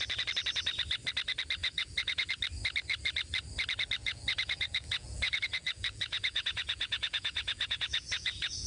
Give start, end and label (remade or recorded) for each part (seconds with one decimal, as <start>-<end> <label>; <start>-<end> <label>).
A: 0.0-1.6 recorded; 1.6-2.3 remade; 2.3-4.0 recorded; 4.0-8.7 remade